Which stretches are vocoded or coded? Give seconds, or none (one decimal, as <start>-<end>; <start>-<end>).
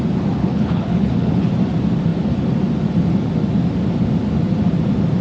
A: 0.4-1.5